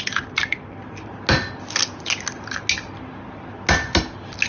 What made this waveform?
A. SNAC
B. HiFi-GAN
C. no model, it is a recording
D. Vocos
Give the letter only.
C